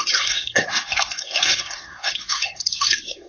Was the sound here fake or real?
fake